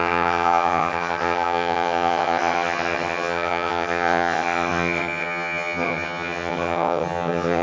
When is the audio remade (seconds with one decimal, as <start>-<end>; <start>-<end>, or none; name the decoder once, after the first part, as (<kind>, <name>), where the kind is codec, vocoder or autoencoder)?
0.0-7.6 (vocoder, HiFi-GAN)